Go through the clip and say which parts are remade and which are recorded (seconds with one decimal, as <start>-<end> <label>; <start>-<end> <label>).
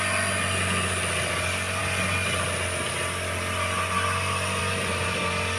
0.0-5.6 recorded